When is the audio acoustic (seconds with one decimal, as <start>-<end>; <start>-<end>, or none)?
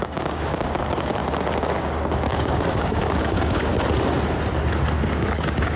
1.2-1.8; 3.7-5.1